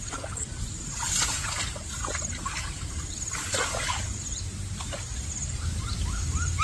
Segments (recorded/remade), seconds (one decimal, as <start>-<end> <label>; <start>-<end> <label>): 0.0-6.6 recorded